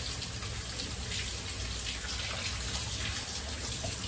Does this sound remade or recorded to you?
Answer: recorded